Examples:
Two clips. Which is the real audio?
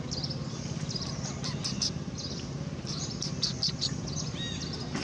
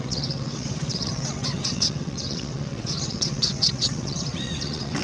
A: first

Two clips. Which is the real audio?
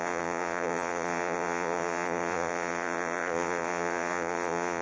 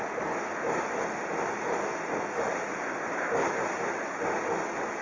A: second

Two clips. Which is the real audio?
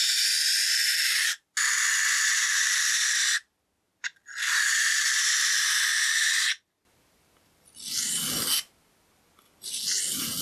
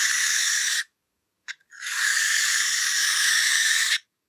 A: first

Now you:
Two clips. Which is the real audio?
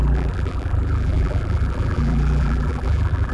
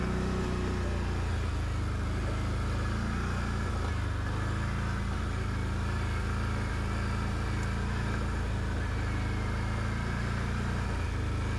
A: second